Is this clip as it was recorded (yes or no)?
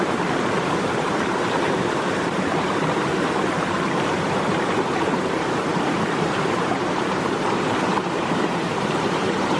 no